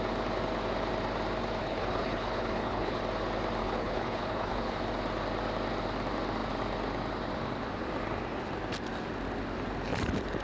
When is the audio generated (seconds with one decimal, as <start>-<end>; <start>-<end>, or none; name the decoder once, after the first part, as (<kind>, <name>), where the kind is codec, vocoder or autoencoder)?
1.6-3.0 (codec, HILCodec); 3.6-4.8